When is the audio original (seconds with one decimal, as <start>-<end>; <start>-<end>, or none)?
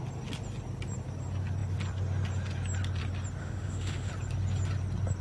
0.0-3.4; 4.1-5.2